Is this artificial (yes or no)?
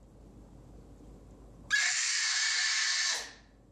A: no